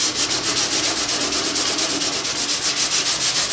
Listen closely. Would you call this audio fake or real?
real